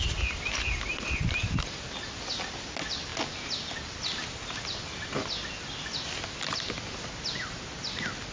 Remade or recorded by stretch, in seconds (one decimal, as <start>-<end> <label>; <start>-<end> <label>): 0.0-8.3 recorded